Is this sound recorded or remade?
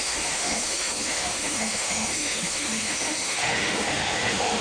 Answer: remade